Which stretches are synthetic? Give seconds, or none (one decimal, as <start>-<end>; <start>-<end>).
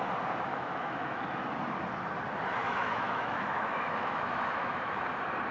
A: 0.5-1.2; 2.6-5.0